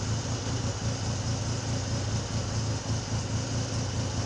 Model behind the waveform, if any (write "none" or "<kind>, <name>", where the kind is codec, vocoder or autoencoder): none